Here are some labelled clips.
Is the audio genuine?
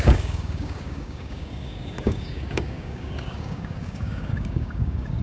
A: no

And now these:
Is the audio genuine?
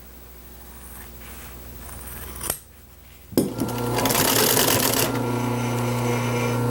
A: yes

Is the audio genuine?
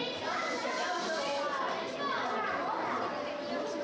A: yes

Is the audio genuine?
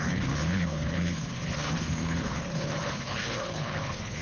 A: no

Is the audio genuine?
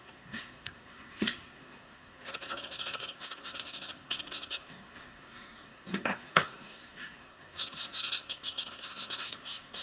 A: no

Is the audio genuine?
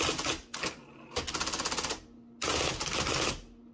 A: yes